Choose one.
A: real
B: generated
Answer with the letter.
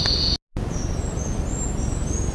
A